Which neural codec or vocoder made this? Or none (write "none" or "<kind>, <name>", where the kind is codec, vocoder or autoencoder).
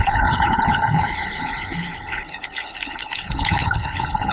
codec, HILCodec